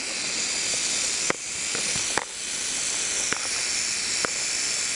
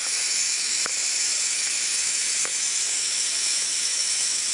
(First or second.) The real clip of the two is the first